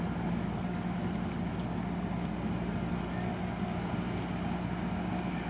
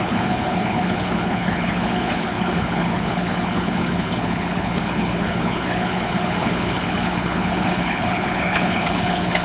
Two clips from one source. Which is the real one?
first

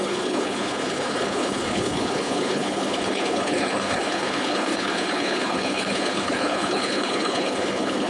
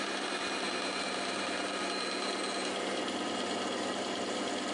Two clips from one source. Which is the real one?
second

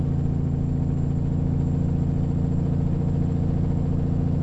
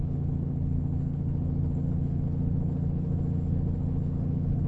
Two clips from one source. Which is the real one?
first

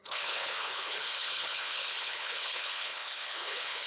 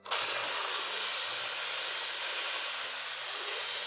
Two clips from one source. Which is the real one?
second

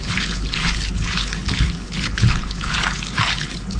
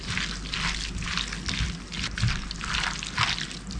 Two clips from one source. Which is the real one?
second